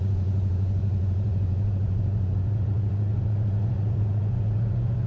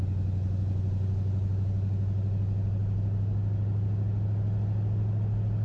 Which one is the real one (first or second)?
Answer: second